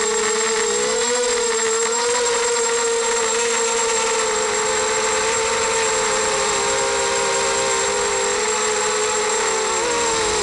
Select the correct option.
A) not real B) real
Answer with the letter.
B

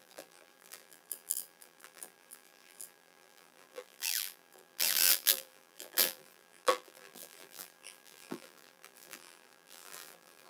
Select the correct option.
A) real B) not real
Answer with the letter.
B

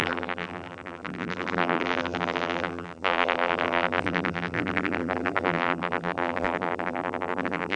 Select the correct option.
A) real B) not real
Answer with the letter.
B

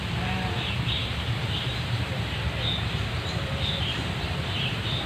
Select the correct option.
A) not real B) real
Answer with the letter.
A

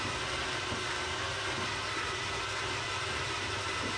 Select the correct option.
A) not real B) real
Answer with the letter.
B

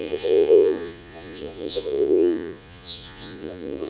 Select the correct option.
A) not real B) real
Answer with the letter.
A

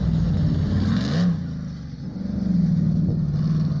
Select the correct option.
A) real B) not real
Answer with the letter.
A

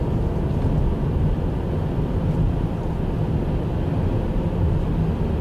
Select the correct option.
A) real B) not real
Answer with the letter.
A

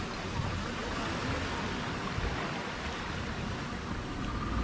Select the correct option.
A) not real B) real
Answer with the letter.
B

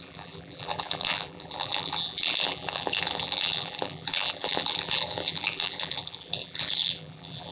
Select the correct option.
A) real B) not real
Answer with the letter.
B